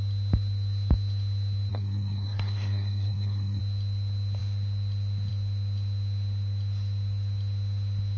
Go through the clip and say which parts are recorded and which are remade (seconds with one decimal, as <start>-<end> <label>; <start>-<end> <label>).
0.0-1.7 recorded; 1.7-3.6 remade; 3.6-8.2 recorded